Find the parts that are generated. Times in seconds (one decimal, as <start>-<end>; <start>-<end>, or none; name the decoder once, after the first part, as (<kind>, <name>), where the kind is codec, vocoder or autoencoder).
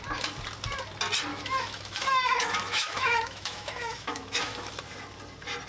1.3-4.7 (autoencoder, DAC-VAE)